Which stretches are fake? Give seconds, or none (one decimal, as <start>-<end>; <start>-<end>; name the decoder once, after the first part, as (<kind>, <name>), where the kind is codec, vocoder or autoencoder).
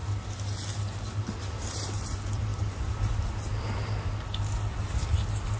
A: none